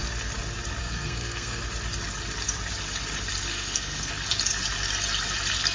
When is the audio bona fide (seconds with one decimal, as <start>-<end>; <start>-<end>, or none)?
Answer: 0.0-0.8; 1.6-3.5; 4.1-5.7